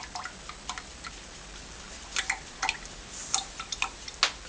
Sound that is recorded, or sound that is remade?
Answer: recorded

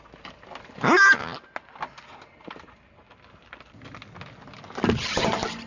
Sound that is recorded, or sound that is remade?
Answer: recorded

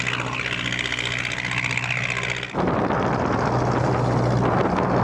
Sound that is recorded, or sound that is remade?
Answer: recorded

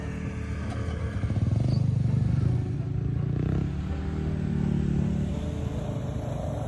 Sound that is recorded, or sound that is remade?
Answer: recorded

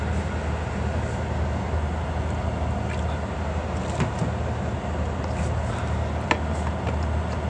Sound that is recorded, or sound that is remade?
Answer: recorded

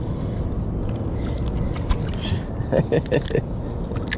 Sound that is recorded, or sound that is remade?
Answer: recorded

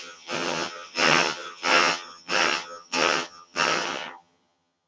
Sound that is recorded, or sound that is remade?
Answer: remade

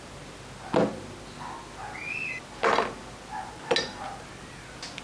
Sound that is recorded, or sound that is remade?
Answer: recorded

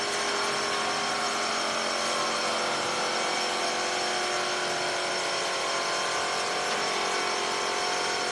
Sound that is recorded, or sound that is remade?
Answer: recorded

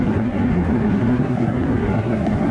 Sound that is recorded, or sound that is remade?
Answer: remade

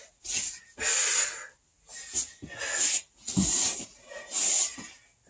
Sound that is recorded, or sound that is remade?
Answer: recorded